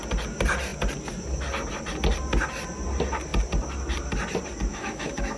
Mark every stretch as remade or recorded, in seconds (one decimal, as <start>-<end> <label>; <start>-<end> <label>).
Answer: 0.0-4.7 recorded; 4.7-5.4 remade